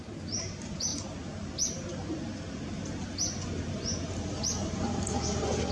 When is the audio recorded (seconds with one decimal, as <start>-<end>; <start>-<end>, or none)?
0.9-4.3